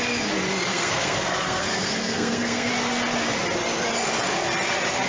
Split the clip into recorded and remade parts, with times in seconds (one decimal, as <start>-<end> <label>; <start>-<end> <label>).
0.0-0.7 recorded; 0.7-2.7 remade; 2.7-5.1 recorded